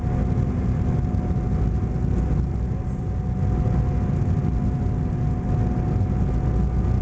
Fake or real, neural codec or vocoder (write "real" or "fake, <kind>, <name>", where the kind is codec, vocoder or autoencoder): real